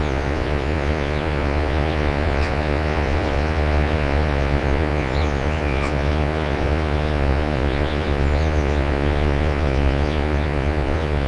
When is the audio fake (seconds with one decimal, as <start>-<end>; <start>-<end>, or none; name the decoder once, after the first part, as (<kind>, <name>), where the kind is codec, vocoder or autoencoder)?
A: 0.0-11.3 (vocoder, Vocos)